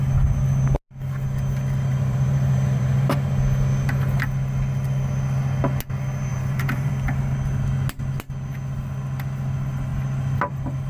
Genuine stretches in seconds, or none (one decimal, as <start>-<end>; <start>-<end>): 0.0-1.9; 3.3-6.3; 6.9-10.9

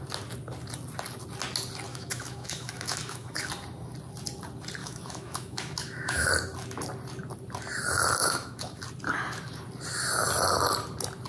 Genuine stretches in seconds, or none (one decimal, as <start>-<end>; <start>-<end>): 0.0-1.9; 3.5-4.8; 6.3-8.2; 8.8-11.3

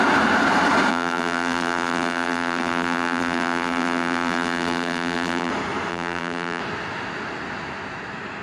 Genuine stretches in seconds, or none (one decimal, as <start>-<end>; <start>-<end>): 0.0-0.9; 5.5-5.9; 6.6-8.4

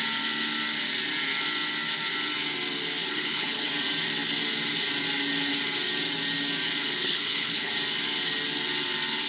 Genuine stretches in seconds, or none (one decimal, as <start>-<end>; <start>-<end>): 0.0-3.0; 3.7-7.0; 7.7-9.3

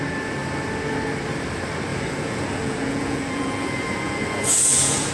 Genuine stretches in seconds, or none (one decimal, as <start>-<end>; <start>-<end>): 0.0-1.9

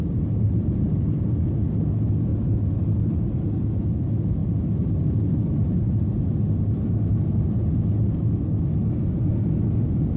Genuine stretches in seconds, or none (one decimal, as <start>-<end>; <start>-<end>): 0.0-4.4; 6.3-10.2

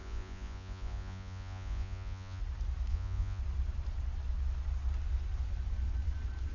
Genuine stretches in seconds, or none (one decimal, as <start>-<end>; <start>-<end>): 2.4-2.9; 3.4-6.5